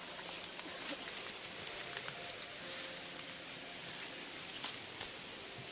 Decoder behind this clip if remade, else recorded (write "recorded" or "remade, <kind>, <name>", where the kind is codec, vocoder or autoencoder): recorded